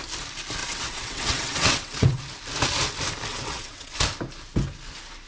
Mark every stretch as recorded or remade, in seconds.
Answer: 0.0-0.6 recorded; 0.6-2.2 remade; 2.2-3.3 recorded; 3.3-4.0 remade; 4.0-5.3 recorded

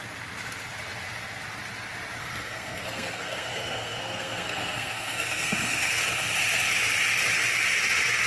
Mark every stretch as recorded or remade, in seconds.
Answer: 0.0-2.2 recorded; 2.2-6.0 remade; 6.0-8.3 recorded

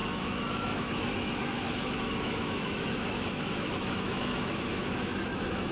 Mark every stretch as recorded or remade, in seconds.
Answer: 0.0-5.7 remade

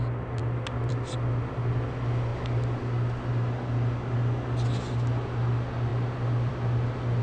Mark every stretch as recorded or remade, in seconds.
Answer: 0.0-7.2 recorded

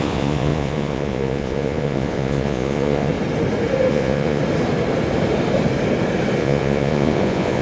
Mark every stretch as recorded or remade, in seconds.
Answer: 0.0-3.1 remade; 3.1-3.9 recorded; 3.9-4.4 remade; 4.4-6.4 recorded; 6.4-7.6 remade